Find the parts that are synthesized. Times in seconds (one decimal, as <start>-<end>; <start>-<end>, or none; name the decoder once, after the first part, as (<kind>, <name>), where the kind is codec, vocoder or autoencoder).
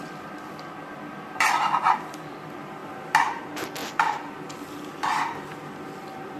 0.0-2.8 (vocoder, BigVGAN v2); 3.4-6.4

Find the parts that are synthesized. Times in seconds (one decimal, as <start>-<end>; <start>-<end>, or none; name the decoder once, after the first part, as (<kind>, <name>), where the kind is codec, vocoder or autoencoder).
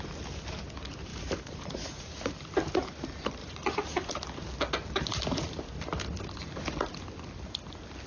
1.1-2.3 (vocoder, Vocos); 3.4-4.1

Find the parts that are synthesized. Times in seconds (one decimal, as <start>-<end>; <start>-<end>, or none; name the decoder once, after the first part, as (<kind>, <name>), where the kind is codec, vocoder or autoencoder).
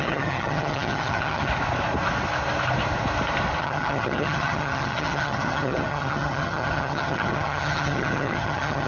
0.0-1.5 (vocoder, HiFi-GAN); 3.6-8.9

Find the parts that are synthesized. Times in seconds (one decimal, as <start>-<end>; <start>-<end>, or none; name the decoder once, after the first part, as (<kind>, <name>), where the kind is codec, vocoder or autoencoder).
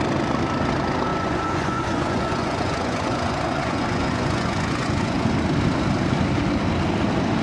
1.1-5.3 (vocoder, Vocos)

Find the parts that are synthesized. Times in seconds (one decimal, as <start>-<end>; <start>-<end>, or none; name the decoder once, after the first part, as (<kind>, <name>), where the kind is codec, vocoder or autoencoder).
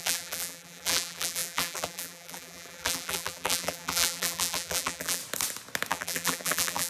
0.0-5.2 (vocoder, BigVGAN v2); 5.9-6.9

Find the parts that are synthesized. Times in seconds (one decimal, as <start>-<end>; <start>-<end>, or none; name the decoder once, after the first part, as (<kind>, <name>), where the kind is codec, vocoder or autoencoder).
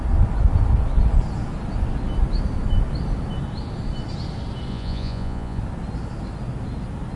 4.7-5.6 (vocoder, Vocos)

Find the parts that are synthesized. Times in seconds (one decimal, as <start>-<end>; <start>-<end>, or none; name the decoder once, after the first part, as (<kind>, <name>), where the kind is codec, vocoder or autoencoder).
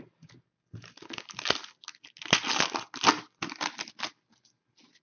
none